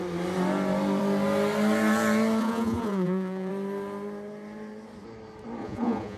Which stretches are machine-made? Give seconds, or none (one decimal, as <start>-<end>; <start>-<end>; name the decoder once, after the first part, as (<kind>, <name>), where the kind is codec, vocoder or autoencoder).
2.4-3.5 (vocoder, Vocos); 5.6-6.2